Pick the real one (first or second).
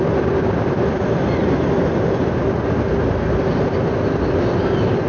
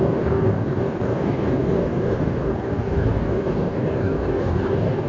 first